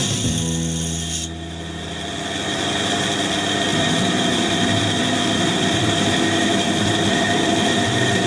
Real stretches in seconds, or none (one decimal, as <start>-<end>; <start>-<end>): 0.0-3.7